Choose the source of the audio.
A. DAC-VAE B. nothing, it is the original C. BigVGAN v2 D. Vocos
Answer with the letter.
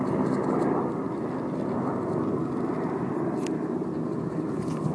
B